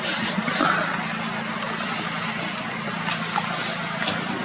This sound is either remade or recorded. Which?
recorded